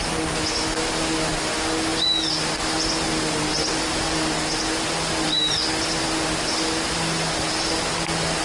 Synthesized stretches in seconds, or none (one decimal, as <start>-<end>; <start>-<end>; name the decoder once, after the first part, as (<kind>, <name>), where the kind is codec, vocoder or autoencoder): none